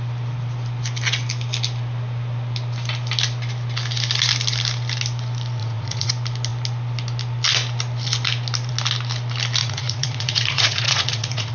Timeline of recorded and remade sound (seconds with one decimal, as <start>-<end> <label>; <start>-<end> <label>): 0.0-5.6 recorded; 5.6-6.1 remade; 6.1-9.6 recorded; 9.6-11.5 remade